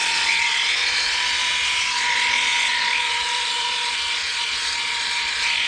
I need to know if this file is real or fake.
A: fake